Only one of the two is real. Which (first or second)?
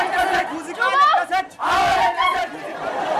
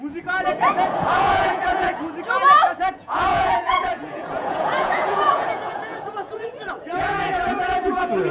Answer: first